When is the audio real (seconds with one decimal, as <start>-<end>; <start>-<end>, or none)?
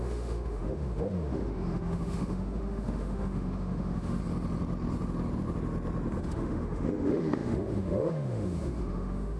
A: 4.2-6.2